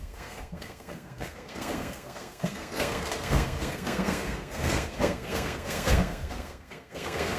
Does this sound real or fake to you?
fake